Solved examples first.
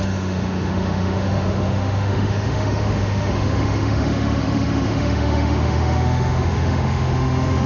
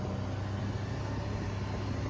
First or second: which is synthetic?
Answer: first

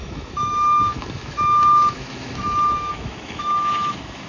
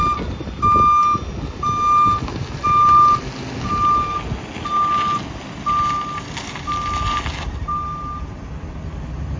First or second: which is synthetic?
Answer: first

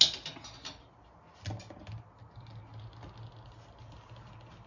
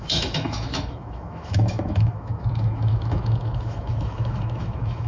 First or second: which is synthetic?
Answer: second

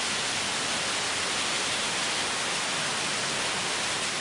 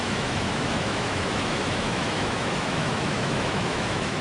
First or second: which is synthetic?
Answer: second